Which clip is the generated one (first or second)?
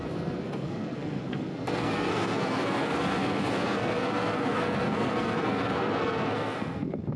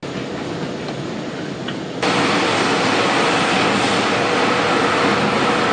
first